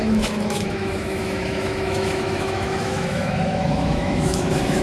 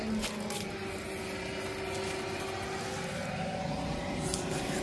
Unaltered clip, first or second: second